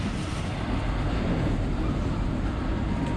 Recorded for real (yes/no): yes